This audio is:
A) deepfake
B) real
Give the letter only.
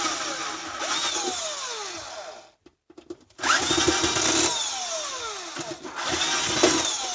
B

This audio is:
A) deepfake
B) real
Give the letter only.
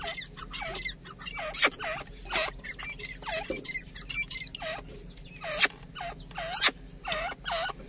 B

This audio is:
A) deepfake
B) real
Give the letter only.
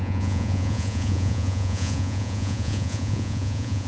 A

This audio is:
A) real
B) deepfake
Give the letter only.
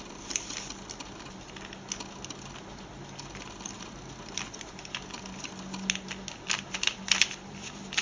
A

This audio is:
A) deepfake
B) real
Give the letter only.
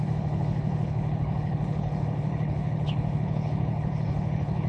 A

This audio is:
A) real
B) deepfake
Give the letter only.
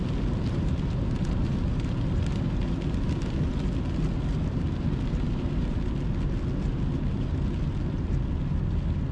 A